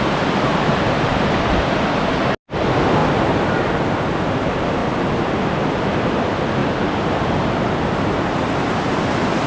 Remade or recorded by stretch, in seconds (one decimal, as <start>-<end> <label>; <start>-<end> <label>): 0.0-0.5 recorded; 0.5-2.1 remade; 2.1-3.0 recorded; 3.0-4.2 remade; 4.2-6.6 recorded; 6.6-8.9 remade; 8.9-9.5 recorded